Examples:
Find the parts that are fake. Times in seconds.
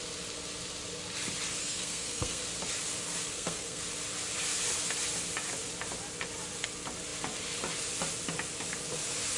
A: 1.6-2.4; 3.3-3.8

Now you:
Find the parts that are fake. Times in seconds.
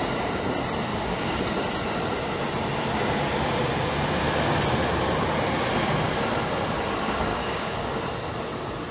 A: 0.9-1.4; 7.3-8.0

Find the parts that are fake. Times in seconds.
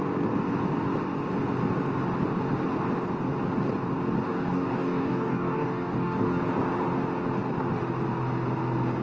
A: 4.3-6.4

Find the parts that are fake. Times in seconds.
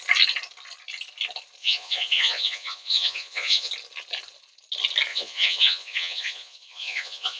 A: 1.6-3.7; 5.1-7.4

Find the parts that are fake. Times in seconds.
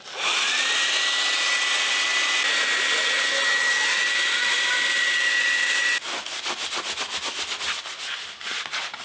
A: none